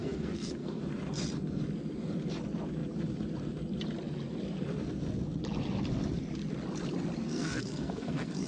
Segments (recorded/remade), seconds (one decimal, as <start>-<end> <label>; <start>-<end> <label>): 0.0-0.8 remade; 0.8-7.2 recorded; 7.2-8.5 remade